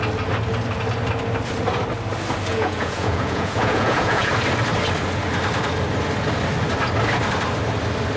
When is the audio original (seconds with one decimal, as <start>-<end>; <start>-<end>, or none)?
0.0-2.5; 4.3-8.2